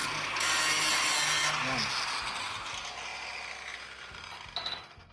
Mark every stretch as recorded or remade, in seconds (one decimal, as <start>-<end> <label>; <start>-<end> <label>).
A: 0.0-5.1 recorded